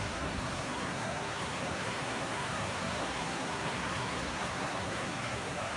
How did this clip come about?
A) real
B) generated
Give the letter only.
B